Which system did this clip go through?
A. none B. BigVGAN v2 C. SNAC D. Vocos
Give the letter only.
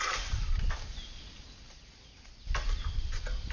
A